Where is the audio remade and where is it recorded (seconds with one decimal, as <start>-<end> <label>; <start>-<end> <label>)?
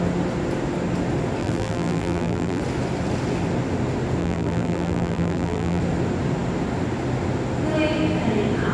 0.0-1.4 recorded; 1.4-2.6 remade; 2.6-4.2 recorded; 4.2-5.8 remade; 5.8-8.7 recorded